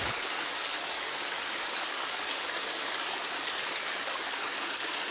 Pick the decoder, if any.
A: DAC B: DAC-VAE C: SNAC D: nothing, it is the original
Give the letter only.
A